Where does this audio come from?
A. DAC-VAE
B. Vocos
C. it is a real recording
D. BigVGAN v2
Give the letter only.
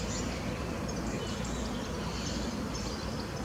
C